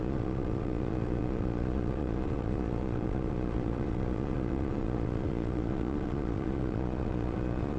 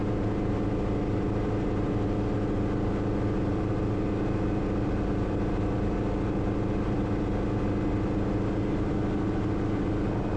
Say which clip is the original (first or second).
second